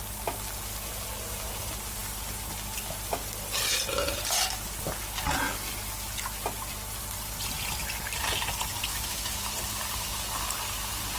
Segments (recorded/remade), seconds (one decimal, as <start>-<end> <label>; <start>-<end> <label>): 0.0-8.9 recorded; 8.9-9.5 remade; 9.5-11.2 recorded